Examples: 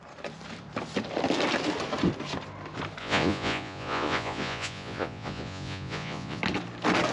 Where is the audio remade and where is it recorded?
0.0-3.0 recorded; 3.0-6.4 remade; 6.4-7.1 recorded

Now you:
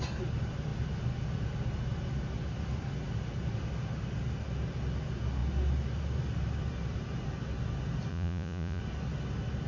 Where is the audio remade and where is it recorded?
0.0-8.1 recorded; 8.1-8.8 remade; 8.8-9.7 recorded